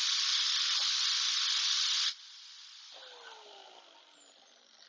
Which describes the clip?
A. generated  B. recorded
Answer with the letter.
B